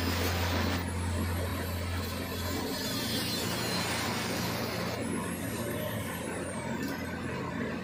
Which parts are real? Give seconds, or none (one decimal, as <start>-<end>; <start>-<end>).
0.0-7.8